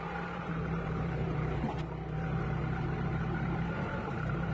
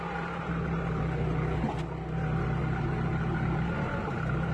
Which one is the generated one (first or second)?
first